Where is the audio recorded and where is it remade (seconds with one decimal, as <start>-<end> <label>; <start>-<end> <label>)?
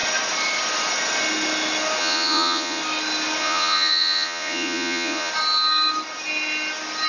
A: 0.0-2.0 recorded; 2.0-2.8 remade; 2.8-3.4 recorded; 3.4-5.3 remade; 5.3-7.1 recorded